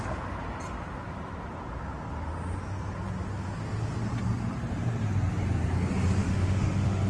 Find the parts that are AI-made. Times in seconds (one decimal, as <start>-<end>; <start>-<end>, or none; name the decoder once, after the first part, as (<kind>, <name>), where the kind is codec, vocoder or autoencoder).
6.2-7.1 (autoencoder, DAC-VAE)

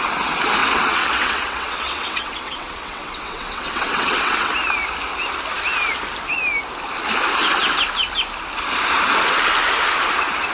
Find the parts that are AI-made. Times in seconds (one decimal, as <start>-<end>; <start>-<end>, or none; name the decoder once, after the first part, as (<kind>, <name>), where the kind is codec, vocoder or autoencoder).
0.6-4.5 (vocoder, WaveNeXt)

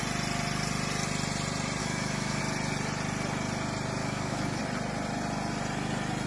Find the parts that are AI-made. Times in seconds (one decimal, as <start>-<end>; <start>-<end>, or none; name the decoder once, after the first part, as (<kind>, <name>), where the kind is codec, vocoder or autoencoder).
1.8-2.4 (autoencoder, DAC-VAE); 4.0-4.6

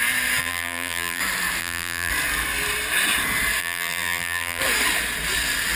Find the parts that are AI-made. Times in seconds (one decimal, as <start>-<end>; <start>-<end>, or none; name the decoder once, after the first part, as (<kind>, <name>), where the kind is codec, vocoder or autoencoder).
0.4-1.2 (vocoder, BigVGAN v2); 1.6-2.1; 3.6-4.6

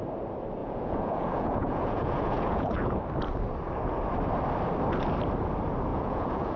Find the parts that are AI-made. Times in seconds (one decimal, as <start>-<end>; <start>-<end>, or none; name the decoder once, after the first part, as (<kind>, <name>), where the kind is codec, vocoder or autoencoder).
0.6-3.0 (vocoder, Vocos); 5.9-6.6